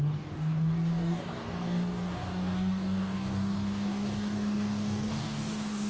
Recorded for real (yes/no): no